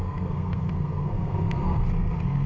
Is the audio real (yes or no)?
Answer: no